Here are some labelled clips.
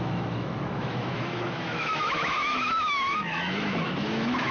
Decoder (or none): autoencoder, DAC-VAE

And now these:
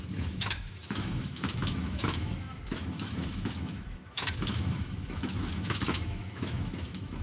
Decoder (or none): autoencoder, DAC-VAE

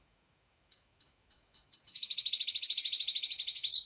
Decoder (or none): autoencoder, DAC-VAE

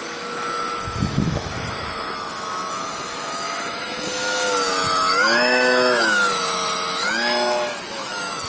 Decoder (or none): autoencoder, DAC-VAE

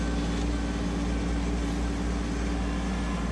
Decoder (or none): none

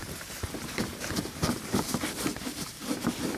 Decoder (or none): none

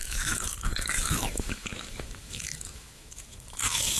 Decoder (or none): autoencoder, DAC-VAE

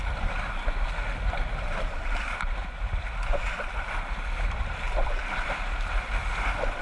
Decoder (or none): none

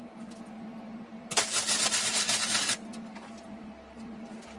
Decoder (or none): none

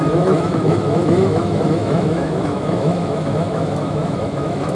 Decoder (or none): autoencoder, DAC-VAE